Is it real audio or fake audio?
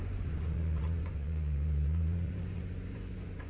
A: fake